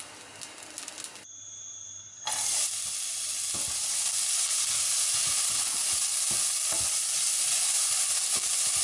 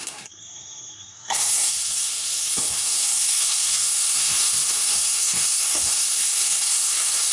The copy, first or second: second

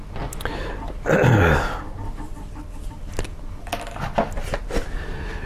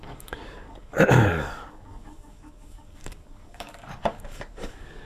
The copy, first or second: second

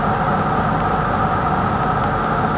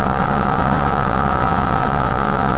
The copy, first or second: second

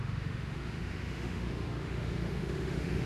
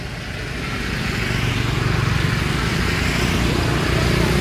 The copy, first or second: first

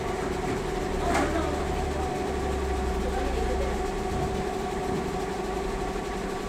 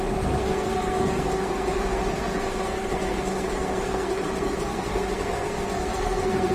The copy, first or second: second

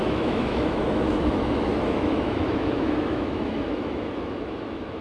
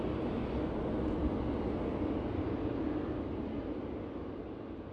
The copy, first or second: first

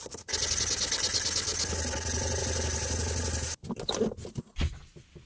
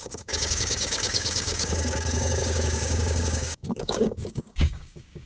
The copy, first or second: second